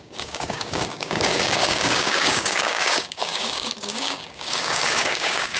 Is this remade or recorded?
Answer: remade